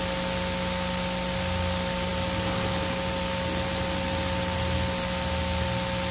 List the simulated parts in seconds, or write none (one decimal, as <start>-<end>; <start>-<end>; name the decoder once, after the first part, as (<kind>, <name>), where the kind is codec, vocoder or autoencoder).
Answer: none